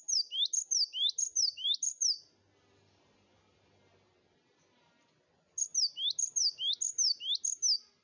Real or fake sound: real